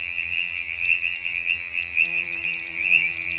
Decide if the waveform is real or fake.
fake